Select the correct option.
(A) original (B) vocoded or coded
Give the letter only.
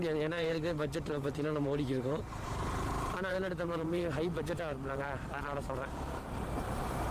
B